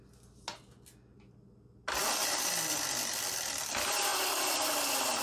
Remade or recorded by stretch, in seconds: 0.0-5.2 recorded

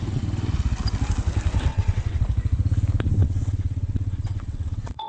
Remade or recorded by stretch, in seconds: 0.0-1.7 recorded; 1.7-2.2 remade; 2.2-3.2 recorded; 3.2-5.1 remade

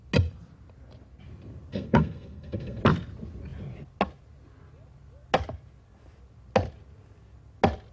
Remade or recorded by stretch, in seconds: 0.0-1.7 recorded; 1.7-2.8 remade; 2.8-7.9 recorded

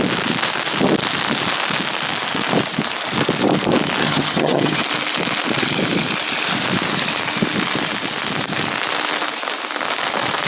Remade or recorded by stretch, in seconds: 0.0-4.0 recorded; 4.0-4.8 remade; 4.8-10.5 recorded

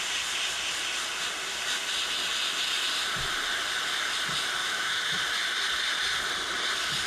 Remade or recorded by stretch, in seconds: 0.0-4.6 recorded; 4.6-5.2 remade; 5.2-7.1 recorded